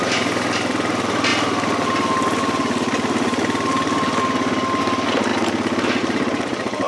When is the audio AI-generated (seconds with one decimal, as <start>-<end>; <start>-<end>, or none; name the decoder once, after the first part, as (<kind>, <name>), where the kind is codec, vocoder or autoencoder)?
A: 0.0-1.3 (vocoder, BigVGAN v2); 4.8-5.3; 6.0-6.9